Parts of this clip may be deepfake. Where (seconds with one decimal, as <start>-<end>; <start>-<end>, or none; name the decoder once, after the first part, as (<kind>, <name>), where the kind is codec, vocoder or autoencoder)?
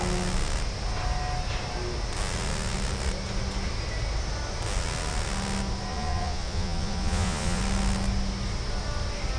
5.9-7.6 (vocoder, Vocos)